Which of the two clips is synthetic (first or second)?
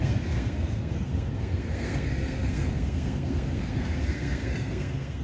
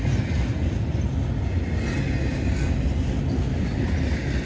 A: first